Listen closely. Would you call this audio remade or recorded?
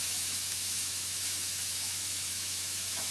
remade